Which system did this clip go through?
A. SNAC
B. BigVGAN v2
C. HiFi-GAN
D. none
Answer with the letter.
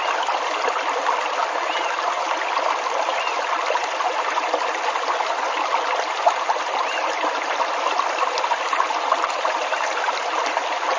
D